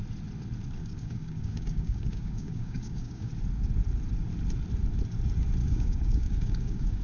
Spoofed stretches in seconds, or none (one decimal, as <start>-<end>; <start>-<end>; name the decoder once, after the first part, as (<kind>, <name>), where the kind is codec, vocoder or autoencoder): 0.8-3.3 (codec, DAC); 5.6-7.0